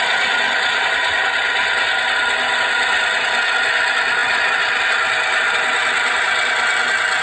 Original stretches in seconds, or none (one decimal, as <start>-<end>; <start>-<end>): 0.0-7.2